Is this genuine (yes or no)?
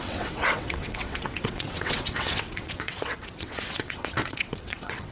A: no